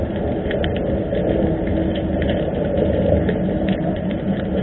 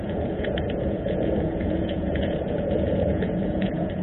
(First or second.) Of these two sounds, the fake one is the second